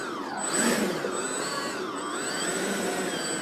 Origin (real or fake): real